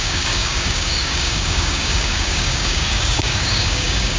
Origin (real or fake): fake